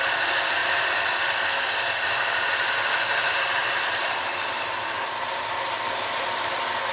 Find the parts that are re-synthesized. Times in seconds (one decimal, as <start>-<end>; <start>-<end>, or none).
0.6-1.2